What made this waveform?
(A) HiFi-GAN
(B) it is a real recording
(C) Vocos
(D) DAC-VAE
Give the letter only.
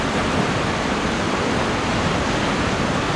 B